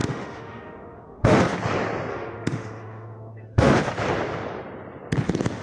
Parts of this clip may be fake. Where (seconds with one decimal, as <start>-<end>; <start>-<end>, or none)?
0.0-1.4; 2.1-3.8